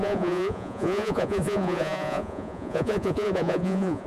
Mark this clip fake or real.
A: fake